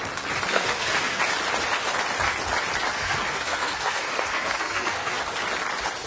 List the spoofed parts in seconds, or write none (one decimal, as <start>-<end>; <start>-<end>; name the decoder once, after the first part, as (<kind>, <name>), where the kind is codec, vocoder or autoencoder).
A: 0.5-1.2 (codec, SNAC); 2.9-5.2

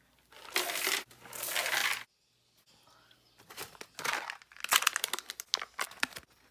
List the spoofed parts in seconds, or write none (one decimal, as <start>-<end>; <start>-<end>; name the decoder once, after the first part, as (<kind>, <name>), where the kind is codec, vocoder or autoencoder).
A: none

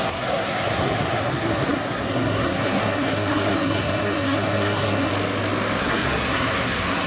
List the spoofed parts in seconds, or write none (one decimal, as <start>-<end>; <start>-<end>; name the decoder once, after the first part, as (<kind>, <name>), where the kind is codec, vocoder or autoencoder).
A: 0.0-5.1 (codec, SNAC); 5.8-7.1

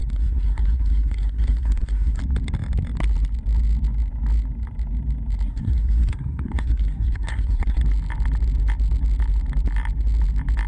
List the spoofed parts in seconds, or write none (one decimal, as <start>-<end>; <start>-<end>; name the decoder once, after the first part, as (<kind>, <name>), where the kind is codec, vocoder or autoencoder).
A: 0.0-2.2 (codec, SNAC); 5.5-7.8

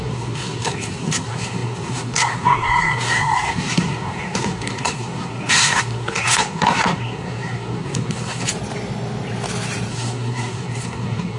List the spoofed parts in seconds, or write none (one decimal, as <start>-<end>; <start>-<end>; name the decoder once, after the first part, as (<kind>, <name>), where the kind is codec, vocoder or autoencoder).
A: 0.0-8.5 (codec, SNAC); 9.9-11.4

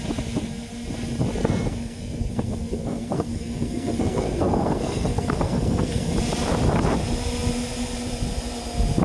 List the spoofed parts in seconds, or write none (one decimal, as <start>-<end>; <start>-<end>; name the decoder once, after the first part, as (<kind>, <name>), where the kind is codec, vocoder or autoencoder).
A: 1.4-6.1 (codec, SNAC)

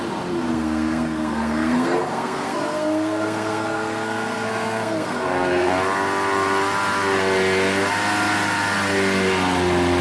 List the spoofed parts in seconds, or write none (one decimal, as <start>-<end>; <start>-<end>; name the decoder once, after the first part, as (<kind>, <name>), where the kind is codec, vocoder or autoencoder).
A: 0.5-5.7 (codec, SNAC)